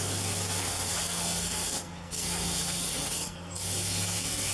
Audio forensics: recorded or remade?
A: remade